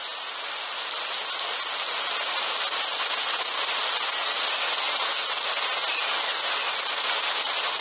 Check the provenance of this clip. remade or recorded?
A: recorded